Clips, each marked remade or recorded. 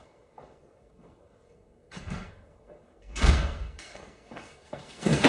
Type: remade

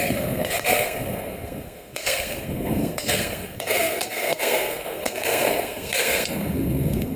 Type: remade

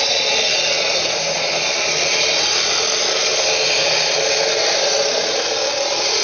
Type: recorded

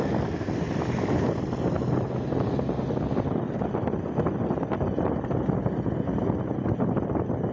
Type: recorded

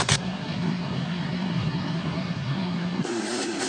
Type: remade